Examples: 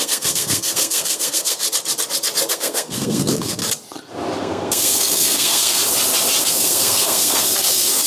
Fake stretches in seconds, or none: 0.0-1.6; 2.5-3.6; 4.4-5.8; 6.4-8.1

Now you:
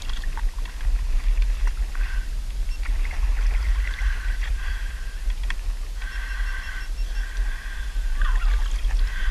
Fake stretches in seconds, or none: 3.6-6.1

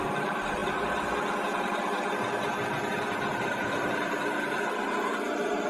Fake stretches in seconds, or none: 3.3-5.2